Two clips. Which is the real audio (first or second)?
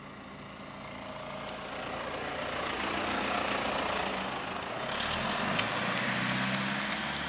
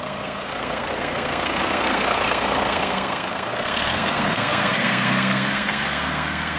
first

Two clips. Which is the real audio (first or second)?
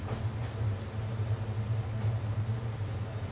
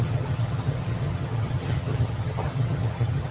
first